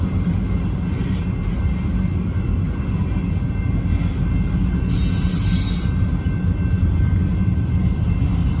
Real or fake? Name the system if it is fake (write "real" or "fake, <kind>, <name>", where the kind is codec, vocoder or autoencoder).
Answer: real